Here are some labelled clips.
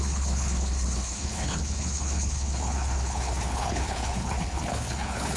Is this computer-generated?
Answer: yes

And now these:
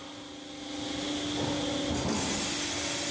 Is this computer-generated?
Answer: no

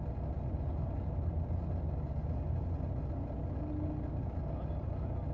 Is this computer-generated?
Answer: no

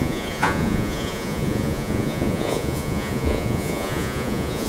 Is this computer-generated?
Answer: yes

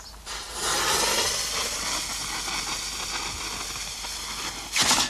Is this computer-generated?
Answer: no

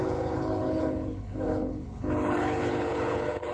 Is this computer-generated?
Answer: yes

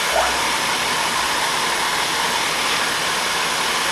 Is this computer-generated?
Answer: no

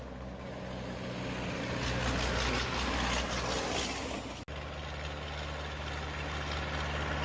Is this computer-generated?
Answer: no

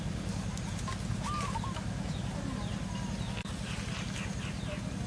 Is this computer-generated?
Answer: no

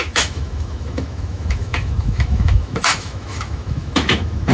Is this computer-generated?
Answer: yes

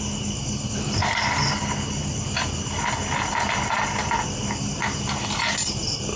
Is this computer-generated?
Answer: no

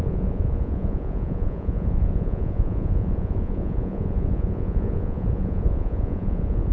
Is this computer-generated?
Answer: yes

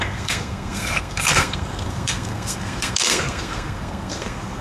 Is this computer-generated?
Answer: yes